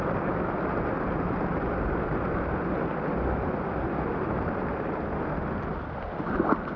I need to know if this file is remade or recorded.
recorded